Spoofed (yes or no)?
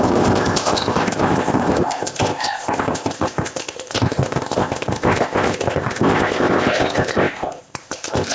yes